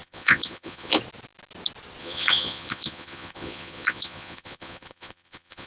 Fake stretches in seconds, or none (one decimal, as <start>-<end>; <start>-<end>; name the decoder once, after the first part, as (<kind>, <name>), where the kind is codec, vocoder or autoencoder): 0.0-1.0 (vocoder, Vocos); 2.0-5.7